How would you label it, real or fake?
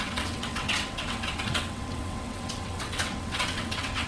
fake